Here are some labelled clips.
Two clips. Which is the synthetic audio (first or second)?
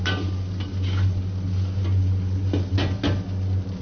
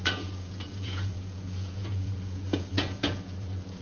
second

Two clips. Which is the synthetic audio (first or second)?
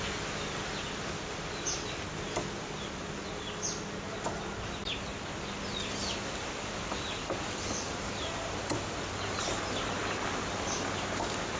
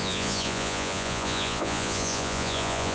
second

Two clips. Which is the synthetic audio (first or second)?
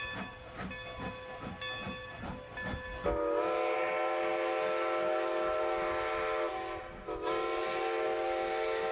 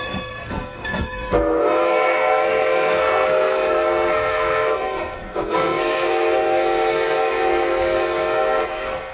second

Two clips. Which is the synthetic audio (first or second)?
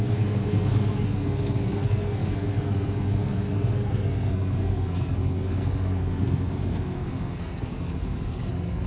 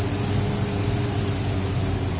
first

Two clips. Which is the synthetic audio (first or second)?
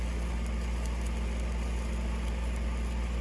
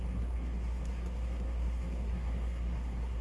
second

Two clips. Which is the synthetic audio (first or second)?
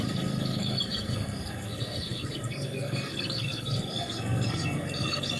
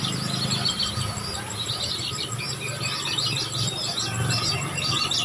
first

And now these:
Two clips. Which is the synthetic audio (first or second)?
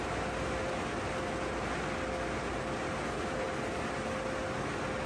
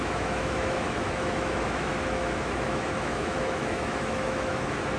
second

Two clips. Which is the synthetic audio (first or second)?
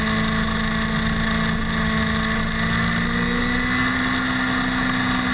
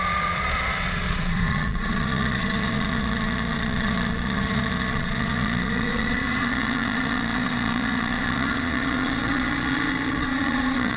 second